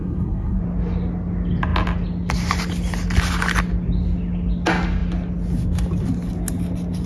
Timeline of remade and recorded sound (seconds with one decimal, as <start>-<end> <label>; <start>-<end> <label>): 0.0-0.6 remade; 0.6-7.1 recorded